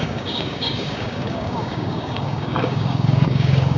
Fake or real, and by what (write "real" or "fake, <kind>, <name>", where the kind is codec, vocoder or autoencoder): fake, codec, DAC